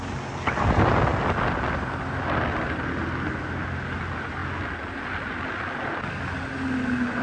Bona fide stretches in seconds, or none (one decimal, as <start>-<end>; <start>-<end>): 0.0-7.2